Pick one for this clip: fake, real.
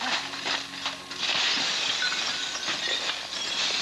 real